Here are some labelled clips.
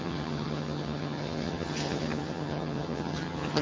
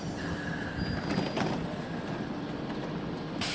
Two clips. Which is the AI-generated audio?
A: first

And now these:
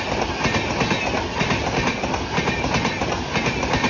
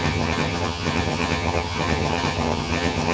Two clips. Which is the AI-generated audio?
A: second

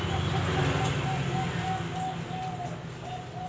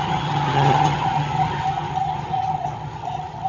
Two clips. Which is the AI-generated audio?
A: second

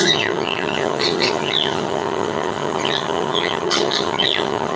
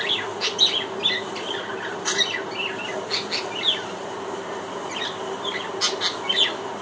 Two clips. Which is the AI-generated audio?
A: first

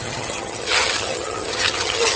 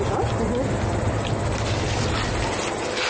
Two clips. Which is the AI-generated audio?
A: first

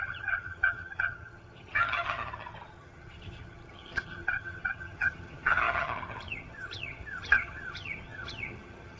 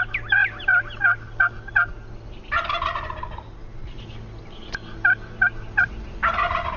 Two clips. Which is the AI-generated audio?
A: first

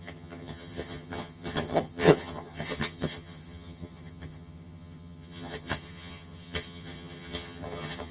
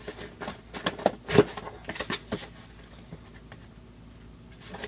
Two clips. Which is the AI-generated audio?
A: first